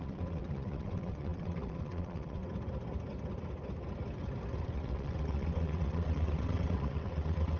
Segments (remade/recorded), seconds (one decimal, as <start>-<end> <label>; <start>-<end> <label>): 0.0-2.4 remade; 2.4-4.6 recorded; 4.6-7.6 remade